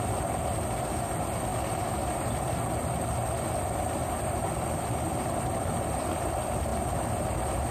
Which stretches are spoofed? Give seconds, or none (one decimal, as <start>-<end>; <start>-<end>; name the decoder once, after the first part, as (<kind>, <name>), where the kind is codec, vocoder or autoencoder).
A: none